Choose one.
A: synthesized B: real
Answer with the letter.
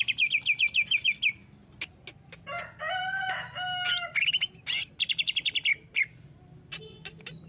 B